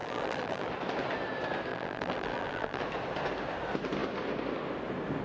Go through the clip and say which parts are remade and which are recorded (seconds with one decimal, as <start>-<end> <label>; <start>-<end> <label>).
0.0-0.7 remade; 0.7-1.7 recorded; 1.7-2.8 remade; 2.8-5.2 recorded